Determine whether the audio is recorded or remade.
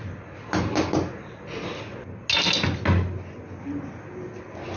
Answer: recorded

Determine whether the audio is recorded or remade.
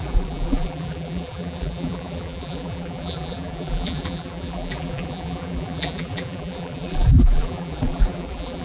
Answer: remade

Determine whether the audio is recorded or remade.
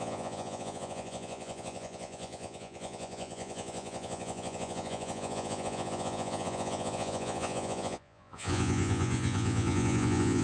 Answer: remade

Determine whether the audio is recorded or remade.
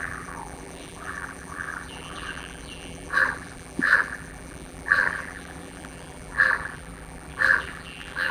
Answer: remade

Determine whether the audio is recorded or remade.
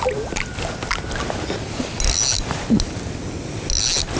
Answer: recorded